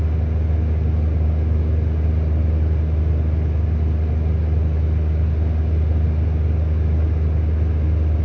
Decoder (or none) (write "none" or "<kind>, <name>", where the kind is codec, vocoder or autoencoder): none